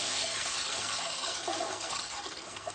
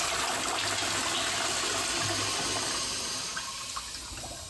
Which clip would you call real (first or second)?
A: second